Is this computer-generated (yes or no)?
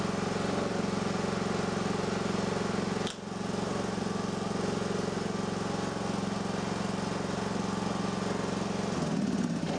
no